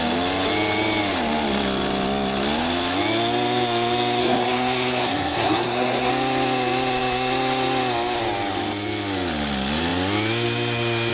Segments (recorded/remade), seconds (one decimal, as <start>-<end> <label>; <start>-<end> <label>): 0.0-4.2 recorded; 4.2-6.1 remade; 6.1-11.1 recorded